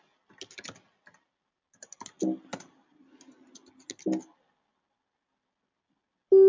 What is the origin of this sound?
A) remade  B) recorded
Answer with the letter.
B